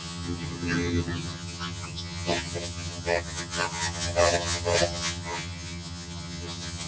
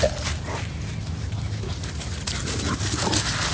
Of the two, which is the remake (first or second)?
first